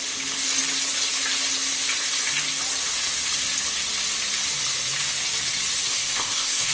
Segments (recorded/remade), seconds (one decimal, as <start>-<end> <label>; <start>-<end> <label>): 0.0-5.9 recorded; 5.9-6.7 remade